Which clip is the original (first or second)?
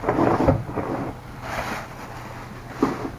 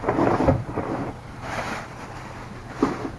first